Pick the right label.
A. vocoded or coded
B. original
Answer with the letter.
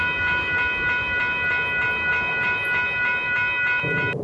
B